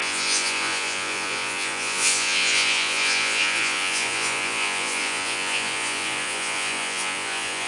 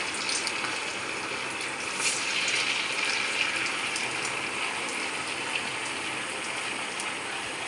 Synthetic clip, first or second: first